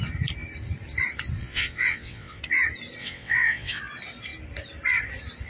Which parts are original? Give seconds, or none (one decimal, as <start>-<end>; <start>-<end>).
0.0-1.4; 2.4-3.0; 3.8-5.5